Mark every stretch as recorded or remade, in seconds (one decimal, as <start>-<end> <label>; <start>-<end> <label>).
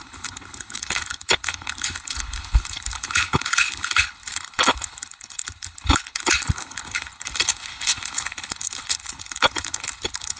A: 0.0-10.4 remade